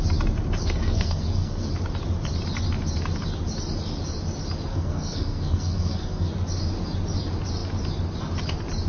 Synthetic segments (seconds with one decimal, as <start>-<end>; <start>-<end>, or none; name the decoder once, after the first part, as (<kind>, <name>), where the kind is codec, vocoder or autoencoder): 0.6-1.7 (codec, SNAC); 4.7-6.3